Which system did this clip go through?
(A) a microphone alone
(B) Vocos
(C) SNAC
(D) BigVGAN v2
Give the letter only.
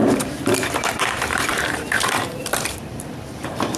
D